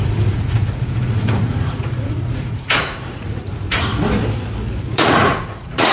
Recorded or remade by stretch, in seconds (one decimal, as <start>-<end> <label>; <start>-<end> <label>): 0.0-3.9 remade; 3.9-4.8 recorded; 4.8-5.9 remade